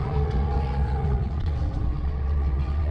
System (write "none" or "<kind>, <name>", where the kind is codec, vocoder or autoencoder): vocoder, WaveNeXt